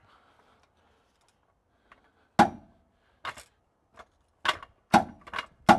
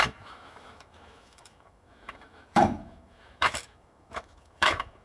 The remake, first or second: second